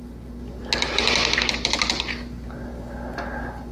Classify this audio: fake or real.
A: real